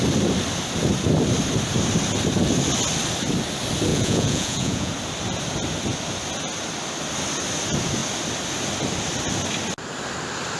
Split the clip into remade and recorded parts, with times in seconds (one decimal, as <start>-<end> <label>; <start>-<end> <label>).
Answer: 0.0-3.9 recorded; 3.9-4.9 remade; 4.9-10.6 recorded

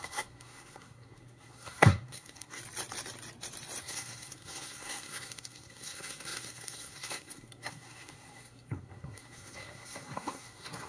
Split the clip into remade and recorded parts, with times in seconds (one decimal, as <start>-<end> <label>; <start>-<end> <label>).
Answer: 0.0-2.6 remade; 2.6-3.8 recorded; 3.8-10.9 remade

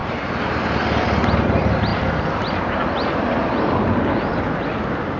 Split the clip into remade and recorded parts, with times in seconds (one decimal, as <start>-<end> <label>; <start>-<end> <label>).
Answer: 0.0-0.6 remade; 0.6-1.9 recorded; 1.9-5.2 remade

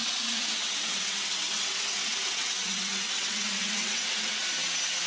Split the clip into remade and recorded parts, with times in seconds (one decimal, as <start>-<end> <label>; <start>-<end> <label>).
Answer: 0.0-4.4 remade; 4.4-5.1 recorded

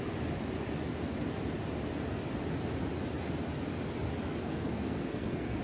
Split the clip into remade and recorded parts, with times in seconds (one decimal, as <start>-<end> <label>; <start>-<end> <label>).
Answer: 0.0-4.4 recorded; 4.4-5.6 remade

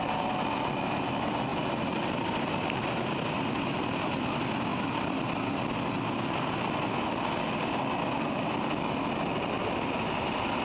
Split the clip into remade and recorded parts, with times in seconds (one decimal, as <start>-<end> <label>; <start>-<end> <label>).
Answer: 0.0-10.6 recorded